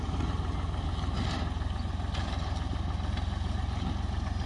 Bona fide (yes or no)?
yes